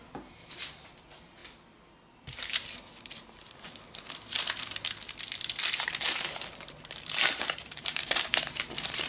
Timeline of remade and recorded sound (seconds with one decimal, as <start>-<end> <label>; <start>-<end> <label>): 0.0-1.4 remade; 1.4-5.8 recorded; 5.8-9.1 remade